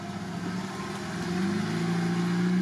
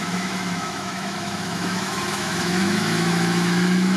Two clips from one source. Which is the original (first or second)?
first